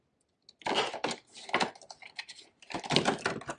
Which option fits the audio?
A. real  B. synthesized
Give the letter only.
A